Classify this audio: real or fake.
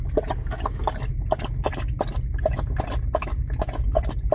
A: real